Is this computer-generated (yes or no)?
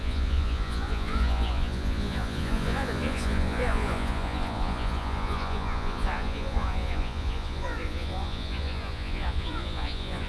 yes